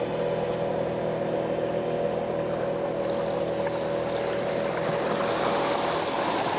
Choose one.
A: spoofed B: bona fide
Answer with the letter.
B